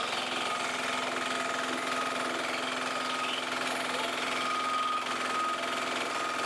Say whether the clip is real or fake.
real